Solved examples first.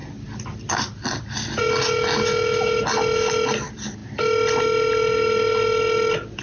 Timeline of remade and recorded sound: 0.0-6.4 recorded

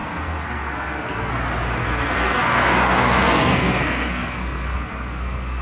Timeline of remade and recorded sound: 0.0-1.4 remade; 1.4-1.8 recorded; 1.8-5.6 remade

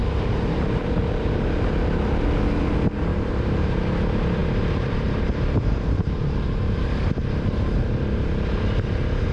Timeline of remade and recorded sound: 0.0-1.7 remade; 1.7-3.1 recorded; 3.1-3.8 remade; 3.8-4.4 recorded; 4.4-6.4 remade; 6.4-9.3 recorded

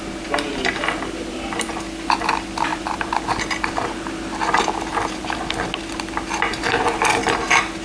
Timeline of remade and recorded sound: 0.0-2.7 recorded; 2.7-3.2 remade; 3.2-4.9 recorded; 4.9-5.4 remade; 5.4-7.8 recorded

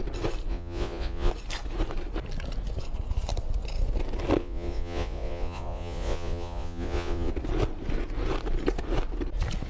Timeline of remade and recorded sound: 0.0-0.5 recorded; 0.5-1.3 remade; 1.3-4.4 recorded; 4.4-7.3 remade; 7.3-9.7 recorded

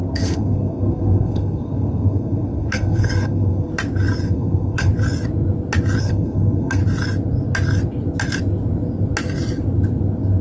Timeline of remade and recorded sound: 0.0-3.7 remade; 3.7-4.2 recorded; 4.2-4.9 remade; 4.9-6.0 recorded; 6.0-6.8 remade; 6.8-10.4 recorded

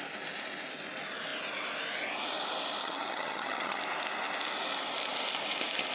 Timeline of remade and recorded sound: 0.0-2.8 recorded; 2.8-3.8 remade; 3.8-5.9 recorded

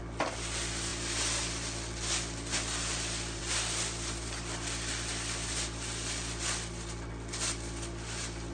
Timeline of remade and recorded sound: 0.0-8.5 recorded